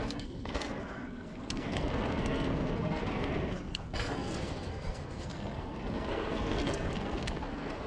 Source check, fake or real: fake